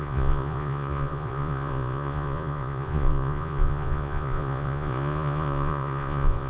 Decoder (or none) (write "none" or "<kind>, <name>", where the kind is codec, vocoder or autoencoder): vocoder, Vocos